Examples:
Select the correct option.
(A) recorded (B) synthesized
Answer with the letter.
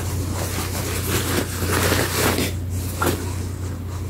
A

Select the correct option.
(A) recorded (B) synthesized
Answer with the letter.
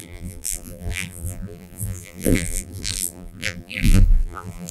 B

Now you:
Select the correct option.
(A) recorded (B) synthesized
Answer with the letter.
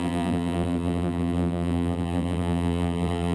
B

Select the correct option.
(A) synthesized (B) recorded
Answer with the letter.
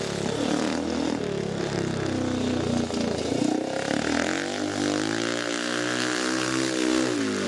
B